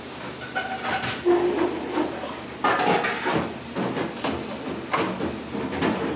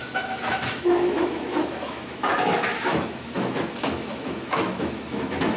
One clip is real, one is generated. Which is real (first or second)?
first